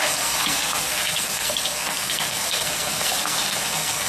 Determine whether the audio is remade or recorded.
remade